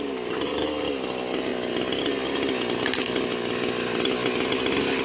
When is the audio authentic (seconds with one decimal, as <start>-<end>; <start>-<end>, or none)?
0.0-5.0